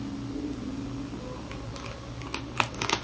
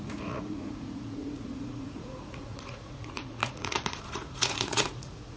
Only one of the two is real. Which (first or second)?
first